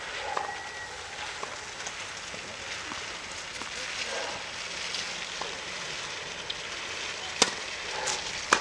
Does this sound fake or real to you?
real